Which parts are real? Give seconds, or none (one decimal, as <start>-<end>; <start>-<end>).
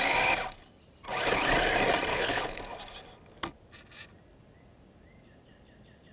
0.0-2.1; 2.6-6.1